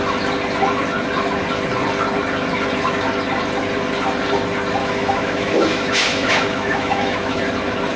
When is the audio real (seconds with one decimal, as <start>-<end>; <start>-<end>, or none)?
0.0-4.8; 7.4-8.0